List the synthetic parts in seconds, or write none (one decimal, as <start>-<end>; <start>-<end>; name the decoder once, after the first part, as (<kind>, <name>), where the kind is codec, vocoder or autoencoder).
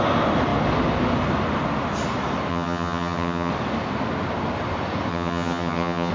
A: 2.5-3.5 (vocoder, HiFi-GAN); 5.1-6.1